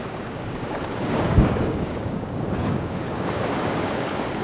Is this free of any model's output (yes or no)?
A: no